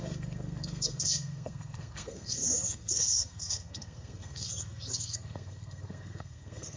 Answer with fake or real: fake